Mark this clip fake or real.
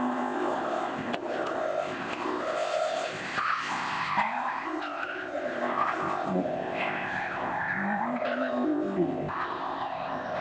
fake